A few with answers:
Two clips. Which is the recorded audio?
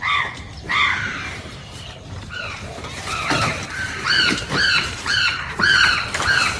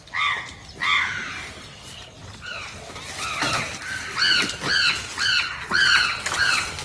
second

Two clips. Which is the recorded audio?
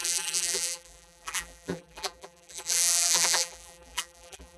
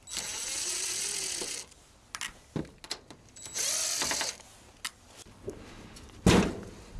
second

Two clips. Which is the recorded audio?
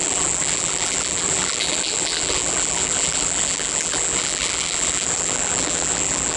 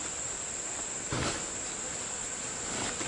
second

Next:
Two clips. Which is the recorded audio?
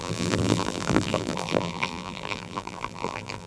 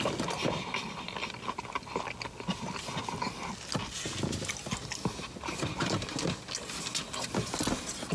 second